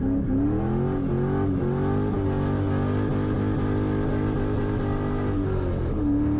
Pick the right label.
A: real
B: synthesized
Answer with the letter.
A